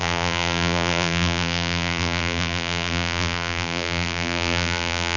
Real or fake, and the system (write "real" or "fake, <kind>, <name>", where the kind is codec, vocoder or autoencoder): fake, vocoder, BigVGAN v2